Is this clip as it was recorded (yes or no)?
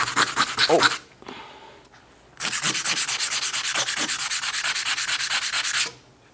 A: yes